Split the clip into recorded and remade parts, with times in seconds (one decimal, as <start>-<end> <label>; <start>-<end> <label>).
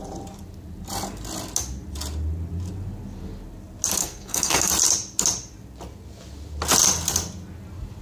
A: 0.0-4.0 recorded; 4.0-4.7 remade; 4.7-8.0 recorded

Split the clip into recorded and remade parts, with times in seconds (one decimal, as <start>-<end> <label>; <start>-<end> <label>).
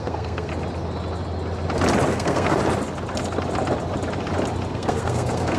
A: 0.0-0.5 remade; 0.5-2.1 recorded; 2.1-2.6 remade; 2.6-4.7 recorded; 4.7-5.6 remade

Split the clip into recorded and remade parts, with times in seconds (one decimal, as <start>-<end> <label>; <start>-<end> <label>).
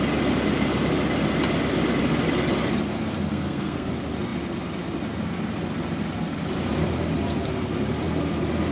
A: 0.0-3.3 recorded; 3.3-3.9 remade; 3.9-8.7 recorded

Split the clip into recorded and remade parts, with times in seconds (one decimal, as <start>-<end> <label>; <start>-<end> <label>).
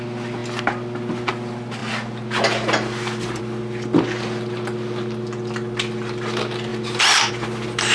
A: 0.0-7.9 recorded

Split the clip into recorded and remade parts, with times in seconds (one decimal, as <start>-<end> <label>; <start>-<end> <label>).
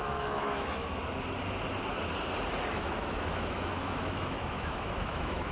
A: 0.0-1.0 remade; 1.0-2.7 recorded; 2.7-5.5 remade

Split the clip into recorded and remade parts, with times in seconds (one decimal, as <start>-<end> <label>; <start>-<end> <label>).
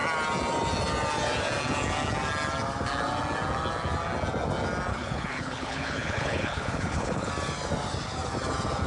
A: 0.0-4.9 recorded; 4.9-7.3 remade; 7.3-8.9 recorded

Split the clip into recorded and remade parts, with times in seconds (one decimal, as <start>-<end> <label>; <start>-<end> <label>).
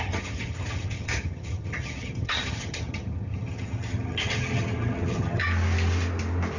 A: 0.0-5.4 remade; 5.4-6.6 recorded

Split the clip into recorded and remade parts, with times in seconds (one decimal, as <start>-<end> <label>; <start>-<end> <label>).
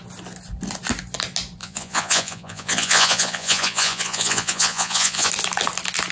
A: 0.0-1.6 recorded; 1.6-5.3 remade; 5.3-6.1 recorded